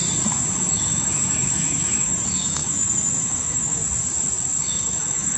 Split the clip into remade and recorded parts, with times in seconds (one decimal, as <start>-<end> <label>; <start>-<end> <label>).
0.0-0.7 recorded; 0.7-3.8 remade; 3.8-4.6 recorded; 4.6-5.4 remade